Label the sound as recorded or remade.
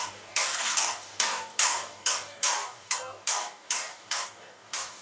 remade